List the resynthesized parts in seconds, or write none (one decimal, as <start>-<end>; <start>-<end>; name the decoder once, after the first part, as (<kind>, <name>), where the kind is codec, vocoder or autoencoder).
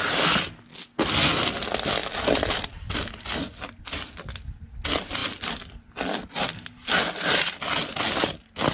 none